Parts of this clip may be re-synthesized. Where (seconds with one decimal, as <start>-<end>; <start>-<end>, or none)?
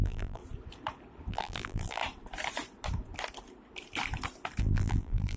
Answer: 0.0-0.4; 1.3-2.0; 4.6-5.4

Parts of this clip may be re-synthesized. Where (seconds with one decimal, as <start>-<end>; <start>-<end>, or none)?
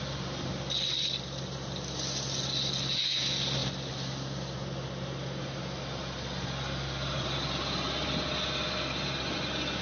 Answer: none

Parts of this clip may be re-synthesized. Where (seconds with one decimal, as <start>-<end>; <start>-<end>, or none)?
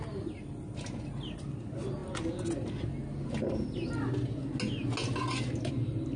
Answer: none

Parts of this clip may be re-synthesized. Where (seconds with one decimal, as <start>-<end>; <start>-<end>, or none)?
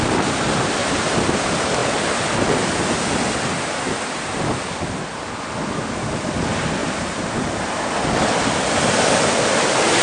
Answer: 0.8-1.4; 6.8-7.9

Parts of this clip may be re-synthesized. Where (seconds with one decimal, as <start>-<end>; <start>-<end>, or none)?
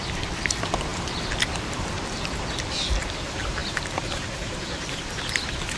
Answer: 3.6-5.2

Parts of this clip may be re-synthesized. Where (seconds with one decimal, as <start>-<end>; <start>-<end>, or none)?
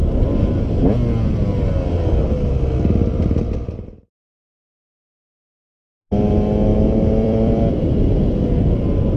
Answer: 3.1-5.7; 6.7-8.1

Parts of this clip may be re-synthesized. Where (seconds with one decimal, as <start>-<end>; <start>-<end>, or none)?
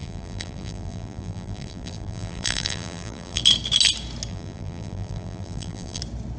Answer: 0.0-3.4; 4.3-6.0